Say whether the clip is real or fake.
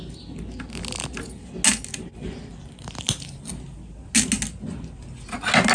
real